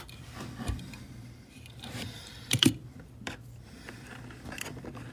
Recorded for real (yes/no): no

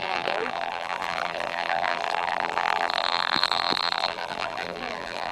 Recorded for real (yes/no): no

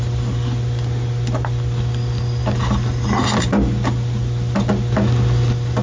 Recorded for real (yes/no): yes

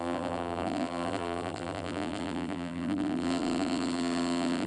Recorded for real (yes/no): no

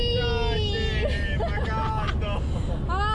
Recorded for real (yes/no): yes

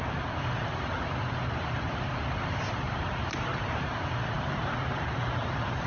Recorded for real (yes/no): no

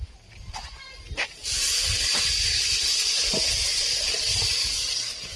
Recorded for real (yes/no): yes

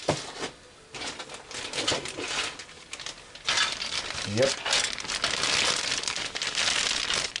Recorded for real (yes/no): yes